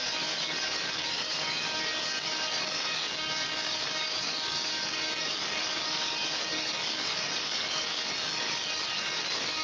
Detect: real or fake fake